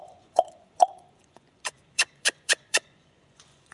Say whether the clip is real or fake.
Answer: fake